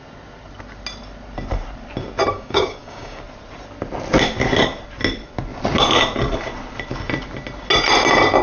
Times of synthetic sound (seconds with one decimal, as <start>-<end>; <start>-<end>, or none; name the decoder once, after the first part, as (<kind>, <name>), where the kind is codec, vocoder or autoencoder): 2.3-3.2 (codec, DAC)